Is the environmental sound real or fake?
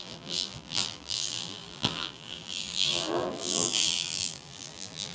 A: fake